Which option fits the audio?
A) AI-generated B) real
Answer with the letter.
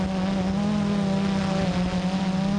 B